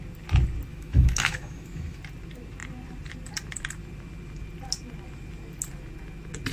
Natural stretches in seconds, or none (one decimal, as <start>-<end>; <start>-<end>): 0.0-0.7; 2.0-6.5